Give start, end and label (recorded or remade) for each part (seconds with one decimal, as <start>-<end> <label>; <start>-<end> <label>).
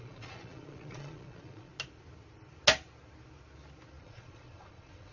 0.0-1.7 remade; 1.7-4.0 recorded; 4.0-5.1 remade